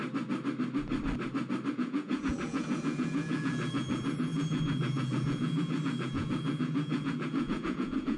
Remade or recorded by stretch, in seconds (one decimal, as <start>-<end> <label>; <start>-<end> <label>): 0.0-1.7 recorded; 1.7-8.2 remade